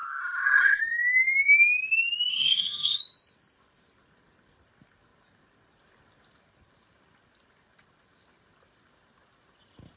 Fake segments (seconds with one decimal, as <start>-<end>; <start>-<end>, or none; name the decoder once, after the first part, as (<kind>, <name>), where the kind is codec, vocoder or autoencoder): 0.0-0.8 (codec, SNAC); 2.3-3.0